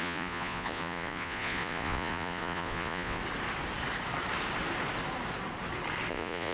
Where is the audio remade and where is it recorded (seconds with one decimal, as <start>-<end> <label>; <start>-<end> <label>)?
0.0-3.2 remade; 3.2-6.1 recorded; 6.1-6.5 remade